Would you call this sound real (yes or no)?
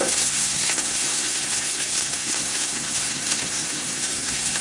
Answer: no